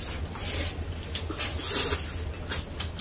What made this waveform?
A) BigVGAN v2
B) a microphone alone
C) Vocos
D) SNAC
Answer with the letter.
B